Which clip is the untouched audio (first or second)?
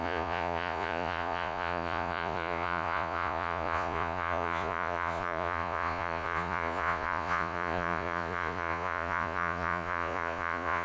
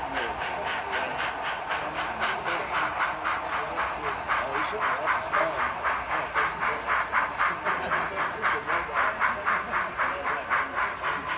second